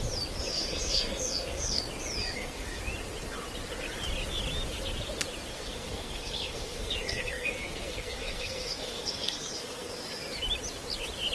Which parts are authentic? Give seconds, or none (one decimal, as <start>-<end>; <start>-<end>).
0.0-0.5; 1.8-2.2; 2.8-5.5; 9.9-11.3